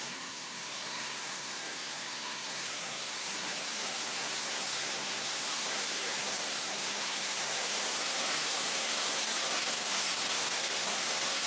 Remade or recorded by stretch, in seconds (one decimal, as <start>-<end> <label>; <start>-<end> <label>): 0.0-11.5 remade